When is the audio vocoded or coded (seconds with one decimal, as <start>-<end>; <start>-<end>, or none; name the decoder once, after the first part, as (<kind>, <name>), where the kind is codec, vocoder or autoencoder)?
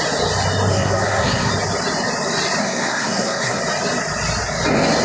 0.7-1.5 (codec, SNAC); 2.6-3.6